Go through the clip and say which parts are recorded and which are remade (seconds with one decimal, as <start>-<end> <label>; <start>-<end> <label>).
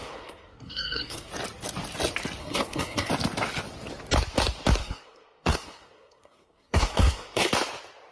0.0-1.3 remade; 1.3-2.4 recorded; 2.4-3.1 remade; 3.1-4.8 recorded; 4.8-7.5 remade; 7.5-8.1 recorded